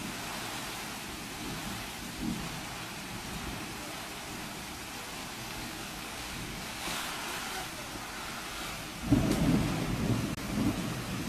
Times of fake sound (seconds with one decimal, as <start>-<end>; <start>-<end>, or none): 5.2-7.1

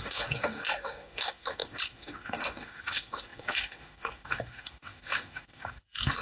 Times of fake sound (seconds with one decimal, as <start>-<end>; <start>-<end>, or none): 0.0-6.2

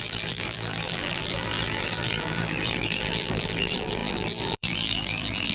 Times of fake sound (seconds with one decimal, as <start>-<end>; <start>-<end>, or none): 0.0-5.5

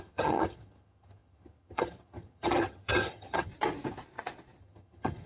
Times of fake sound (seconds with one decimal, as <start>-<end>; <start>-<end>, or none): 0.0-3.5; 4.6-5.3